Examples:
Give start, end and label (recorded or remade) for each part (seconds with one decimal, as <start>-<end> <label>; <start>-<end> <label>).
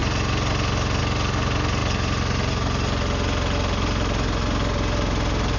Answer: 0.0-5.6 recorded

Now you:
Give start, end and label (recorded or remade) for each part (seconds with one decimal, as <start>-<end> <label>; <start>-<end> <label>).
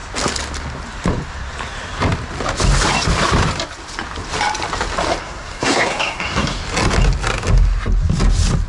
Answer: 0.0-5.2 recorded; 5.2-6.6 remade; 6.6-8.7 recorded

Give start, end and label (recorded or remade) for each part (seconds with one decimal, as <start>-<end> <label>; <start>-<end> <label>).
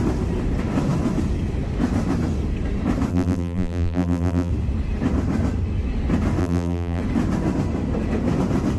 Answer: 0.0-3.1 recorded; 3.1-4.5 remade; 4.5-6.4 recorded; 6.4-7.0 remade; 7.0-8.8 recorded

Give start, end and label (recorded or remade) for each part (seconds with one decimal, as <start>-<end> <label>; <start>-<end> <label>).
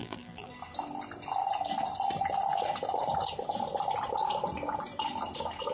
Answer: 0.0-0.5 remade; 0.5-5.7 recorded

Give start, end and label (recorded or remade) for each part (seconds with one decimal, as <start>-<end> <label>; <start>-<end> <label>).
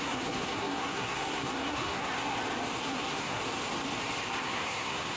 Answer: 0.0-2.1 remade; 2.1-2.8 recorded; 2.8-3.4 remade; 3.4-4.4 recorded; 4.4-5.2 remade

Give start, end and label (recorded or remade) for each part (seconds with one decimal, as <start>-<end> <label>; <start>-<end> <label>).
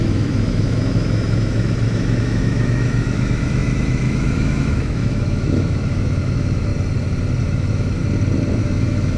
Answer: 0.0-6.7 remade; 6.7-7.4 recorded; 7.4-8.0 remade; 8.0-8.6 recorded; 8.6-9.2 remade